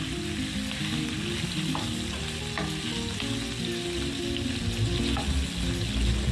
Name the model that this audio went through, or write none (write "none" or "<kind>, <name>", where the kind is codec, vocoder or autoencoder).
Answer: none